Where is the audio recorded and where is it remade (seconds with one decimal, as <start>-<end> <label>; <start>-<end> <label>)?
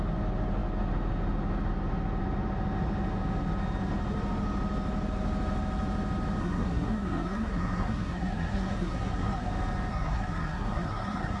0.0-6.4 recorded; 6.4-9.5 remade; 9.5-9.9 recorded; 9.9-11.4 remade